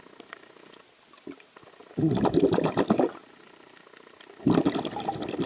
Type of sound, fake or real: real